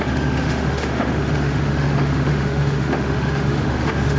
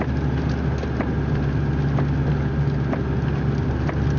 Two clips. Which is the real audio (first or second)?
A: second